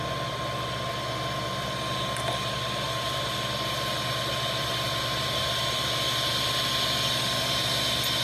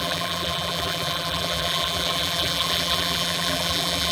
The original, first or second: first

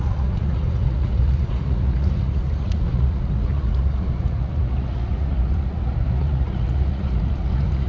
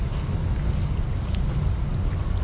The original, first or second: second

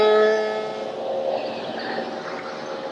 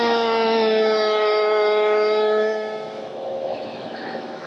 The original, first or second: first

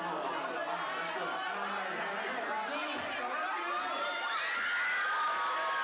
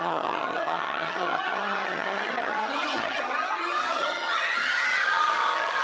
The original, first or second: first